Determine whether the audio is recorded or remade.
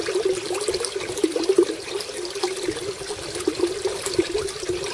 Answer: recorded